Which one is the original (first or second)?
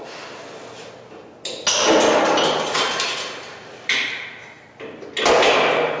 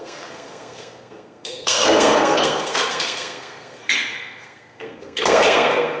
first